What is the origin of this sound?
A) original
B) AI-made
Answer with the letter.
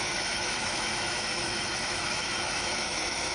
B